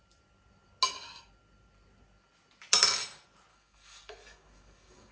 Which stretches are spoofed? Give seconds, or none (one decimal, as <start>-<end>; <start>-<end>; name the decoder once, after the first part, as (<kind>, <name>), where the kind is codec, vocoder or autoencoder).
3.5-5.1 (codec, DAC)